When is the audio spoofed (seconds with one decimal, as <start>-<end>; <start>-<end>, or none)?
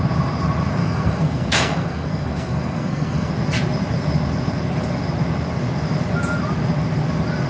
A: 0.8-3.3